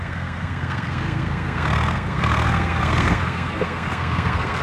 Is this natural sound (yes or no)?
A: no